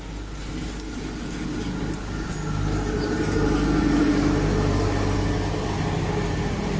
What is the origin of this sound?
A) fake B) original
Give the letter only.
B